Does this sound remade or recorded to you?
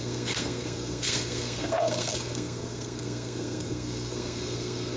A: remade